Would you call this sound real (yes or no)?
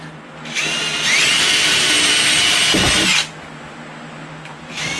yes